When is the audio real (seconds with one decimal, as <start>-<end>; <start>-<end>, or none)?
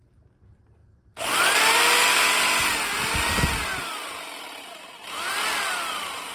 0.0-6.3